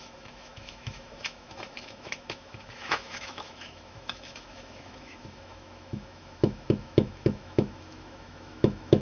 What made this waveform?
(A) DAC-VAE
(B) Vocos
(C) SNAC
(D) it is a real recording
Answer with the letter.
A